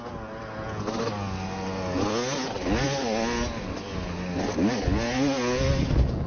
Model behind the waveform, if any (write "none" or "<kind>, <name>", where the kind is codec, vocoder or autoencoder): none